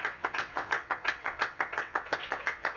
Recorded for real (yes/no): no